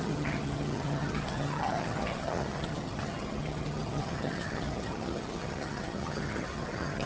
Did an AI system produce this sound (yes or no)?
yes